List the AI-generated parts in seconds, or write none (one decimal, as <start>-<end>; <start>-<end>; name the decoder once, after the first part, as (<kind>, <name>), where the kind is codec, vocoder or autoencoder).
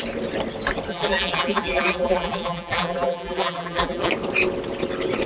0.9-4.1 (vocoder, BigVGAN v2)